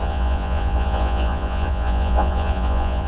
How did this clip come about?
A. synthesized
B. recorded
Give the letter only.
A